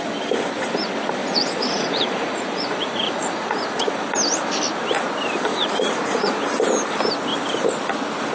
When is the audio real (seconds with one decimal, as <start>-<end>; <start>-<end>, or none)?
0.0-1.2; 3.9-5.5; 6.4-8.3